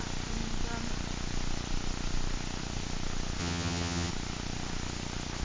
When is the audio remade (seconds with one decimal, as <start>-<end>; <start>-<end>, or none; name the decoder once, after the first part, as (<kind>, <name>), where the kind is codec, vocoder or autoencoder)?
3.4-4.1 (vocoder, HiFi-GAN)